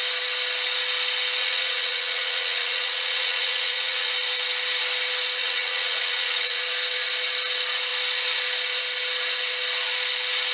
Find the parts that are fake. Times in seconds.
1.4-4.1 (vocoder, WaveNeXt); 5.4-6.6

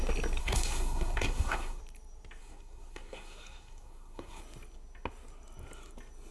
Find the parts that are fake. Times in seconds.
0.4-1.8 (codec, SNAC); 2.4-4.4